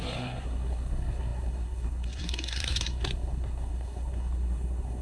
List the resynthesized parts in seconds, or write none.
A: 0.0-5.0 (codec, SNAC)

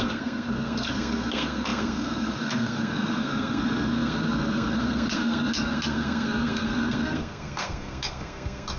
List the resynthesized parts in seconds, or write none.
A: 0.0-8.8 (codec, SNAC)

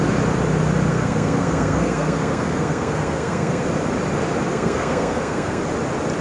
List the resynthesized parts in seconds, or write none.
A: 0.9-3.6 (codec, SNAC); 4.5-5.6